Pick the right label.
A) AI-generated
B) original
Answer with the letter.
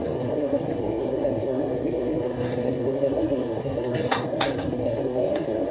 A